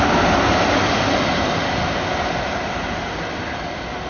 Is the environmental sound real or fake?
real